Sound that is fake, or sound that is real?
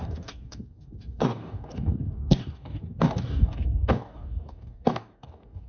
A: fake